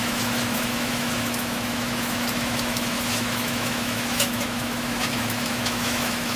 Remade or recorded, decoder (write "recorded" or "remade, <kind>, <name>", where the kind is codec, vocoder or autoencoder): remade, autoencoder, DAC-VAE